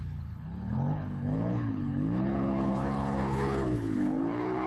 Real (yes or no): no